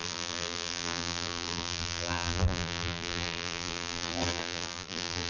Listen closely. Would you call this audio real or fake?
fake